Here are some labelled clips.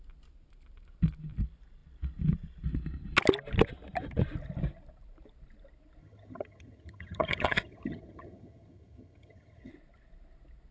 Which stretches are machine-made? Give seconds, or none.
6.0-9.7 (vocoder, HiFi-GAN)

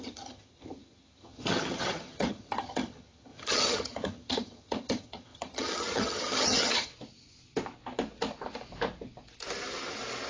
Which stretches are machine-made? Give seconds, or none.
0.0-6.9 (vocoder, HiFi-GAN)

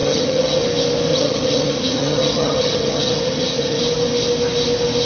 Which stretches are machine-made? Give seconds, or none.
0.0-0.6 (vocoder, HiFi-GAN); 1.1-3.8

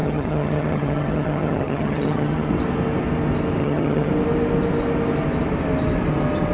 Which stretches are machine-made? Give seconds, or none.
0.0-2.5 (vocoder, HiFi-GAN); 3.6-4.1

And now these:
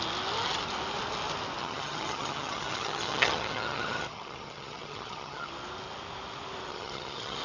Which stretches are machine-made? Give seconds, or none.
1.6-5.5 (vocoder, HiFi-GAN); 6.7-7.4

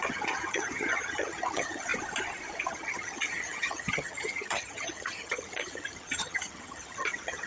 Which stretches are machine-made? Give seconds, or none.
0.0-1.9 (vocoder, HiFi-GAN); 2.7-7.5